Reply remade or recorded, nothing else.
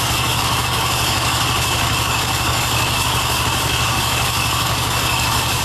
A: remade